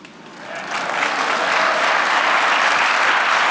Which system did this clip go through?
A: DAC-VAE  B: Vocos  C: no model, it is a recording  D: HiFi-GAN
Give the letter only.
C